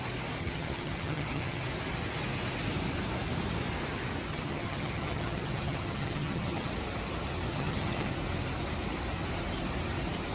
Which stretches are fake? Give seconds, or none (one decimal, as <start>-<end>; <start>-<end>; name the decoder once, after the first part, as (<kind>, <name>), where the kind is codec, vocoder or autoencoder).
0.4-1.6 (vocoder, HiFi-GAN); 4.3-6.7; 7.5-8.1